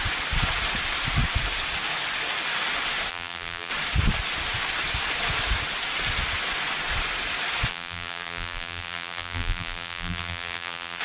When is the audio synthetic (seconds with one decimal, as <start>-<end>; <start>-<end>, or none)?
3.1-3.7; 7.7-11.0